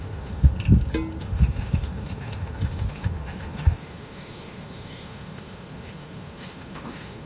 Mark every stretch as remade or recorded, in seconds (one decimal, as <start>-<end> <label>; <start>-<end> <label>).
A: 0.0-0.5 remade; 0.5-1.2 recorded; 1.2-7.3 remade